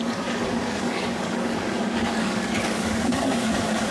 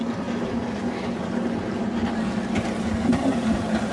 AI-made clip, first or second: first